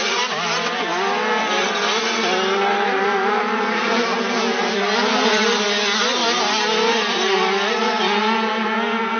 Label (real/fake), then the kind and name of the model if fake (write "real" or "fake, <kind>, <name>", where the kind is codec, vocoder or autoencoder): real